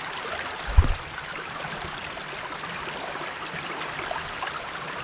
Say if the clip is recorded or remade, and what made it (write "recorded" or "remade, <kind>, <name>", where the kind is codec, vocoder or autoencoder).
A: recorded